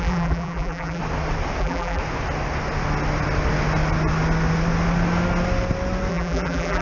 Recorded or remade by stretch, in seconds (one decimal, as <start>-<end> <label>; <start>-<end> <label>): 0.0-1.0 remade; 1.0-1.6 recorded; 1.6-2.0 remade; 2.0-6.1 recorded; 6.1-6.8 remade